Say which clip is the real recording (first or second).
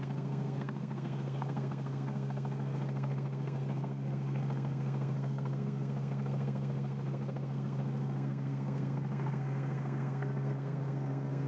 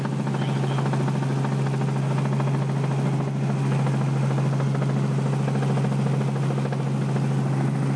second